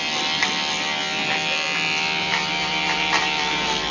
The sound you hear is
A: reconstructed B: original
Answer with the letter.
B